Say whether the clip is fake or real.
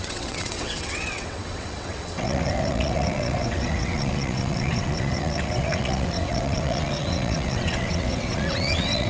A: fake